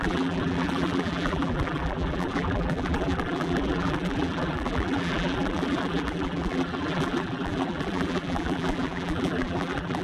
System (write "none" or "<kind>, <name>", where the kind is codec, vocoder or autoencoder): vocoder, BigVGAN v2